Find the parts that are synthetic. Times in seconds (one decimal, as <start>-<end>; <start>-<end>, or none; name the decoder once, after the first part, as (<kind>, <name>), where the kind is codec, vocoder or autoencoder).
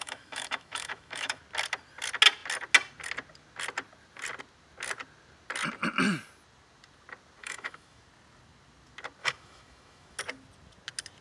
0.0-1.4 (autoencoder, DAC-VAE); 7.4-8.0; 9.2-10.2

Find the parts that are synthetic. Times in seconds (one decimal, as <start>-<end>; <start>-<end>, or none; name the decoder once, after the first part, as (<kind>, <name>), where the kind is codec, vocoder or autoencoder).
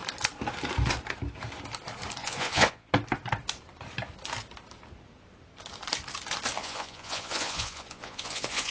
2.2-2.9 (vocoder, Vocos); 6.6-8.7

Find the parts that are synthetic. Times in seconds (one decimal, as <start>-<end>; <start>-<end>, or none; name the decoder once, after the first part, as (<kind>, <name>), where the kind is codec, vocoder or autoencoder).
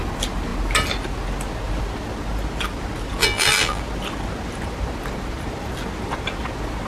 3.2-3.8 (vocoder, BigVGAN v2)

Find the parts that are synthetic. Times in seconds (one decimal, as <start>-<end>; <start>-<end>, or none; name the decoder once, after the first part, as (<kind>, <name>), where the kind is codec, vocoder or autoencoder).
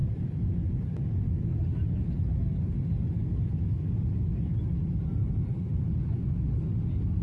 none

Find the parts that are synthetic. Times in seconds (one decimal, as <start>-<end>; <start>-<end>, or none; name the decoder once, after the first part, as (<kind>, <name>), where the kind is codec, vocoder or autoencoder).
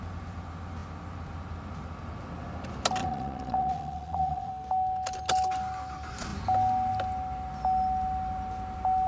3.0-4.5 (vocoder, Vocos)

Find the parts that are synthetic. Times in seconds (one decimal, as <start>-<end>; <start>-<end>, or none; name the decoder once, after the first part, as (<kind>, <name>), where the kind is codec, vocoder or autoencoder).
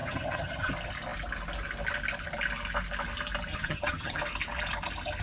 0.0-0.7 (vocoder, HiFi-GAN); 3.5-4.2